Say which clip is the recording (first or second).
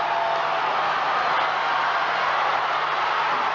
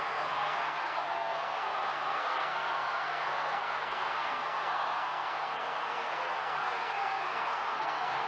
first